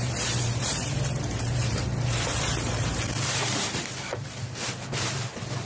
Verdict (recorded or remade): remade